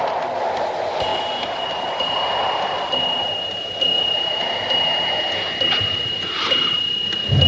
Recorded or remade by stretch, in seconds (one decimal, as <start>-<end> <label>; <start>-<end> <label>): 0.0-7.5 recorded

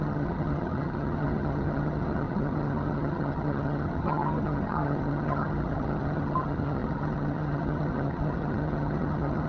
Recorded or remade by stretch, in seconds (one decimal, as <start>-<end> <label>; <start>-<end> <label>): 0.0-9.5 remade